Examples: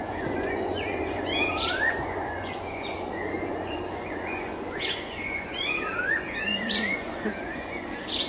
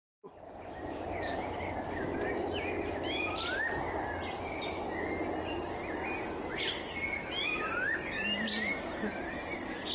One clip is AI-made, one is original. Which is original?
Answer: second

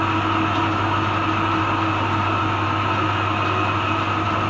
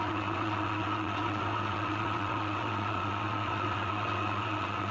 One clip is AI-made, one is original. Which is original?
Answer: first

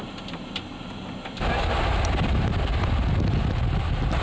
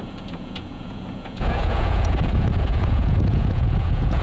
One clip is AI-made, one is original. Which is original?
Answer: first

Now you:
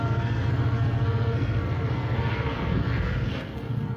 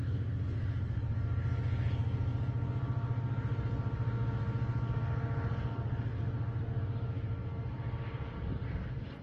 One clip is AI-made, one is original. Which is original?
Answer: second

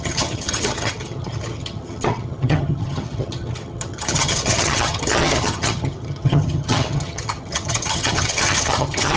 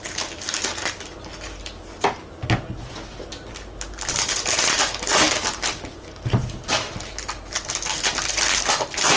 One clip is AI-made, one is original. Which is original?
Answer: second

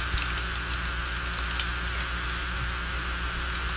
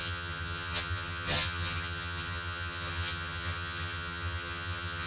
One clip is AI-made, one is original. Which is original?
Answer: first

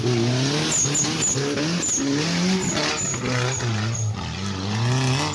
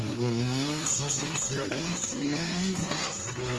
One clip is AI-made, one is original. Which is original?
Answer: first